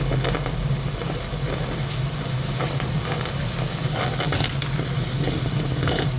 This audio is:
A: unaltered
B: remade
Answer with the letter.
A